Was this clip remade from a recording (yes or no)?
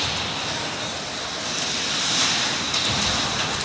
no